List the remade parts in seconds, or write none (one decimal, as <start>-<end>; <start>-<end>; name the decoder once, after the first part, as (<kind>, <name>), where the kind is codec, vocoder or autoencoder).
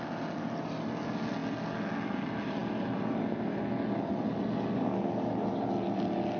none